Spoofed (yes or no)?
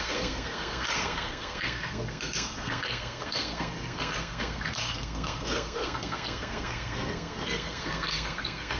yes